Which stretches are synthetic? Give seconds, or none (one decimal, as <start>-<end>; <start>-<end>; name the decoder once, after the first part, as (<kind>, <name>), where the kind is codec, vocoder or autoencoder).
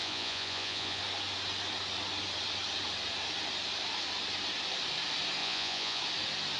0.0-1.0 (vocoder, Vocos); 5.4-6.0